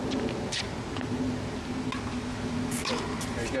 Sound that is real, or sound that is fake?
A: real